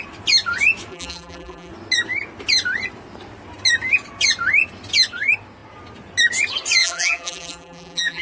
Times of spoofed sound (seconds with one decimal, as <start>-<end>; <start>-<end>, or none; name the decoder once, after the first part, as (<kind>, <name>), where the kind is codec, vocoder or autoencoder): 0.9-1.7 (vocoder, BigVGAN v2); 6.8-8.2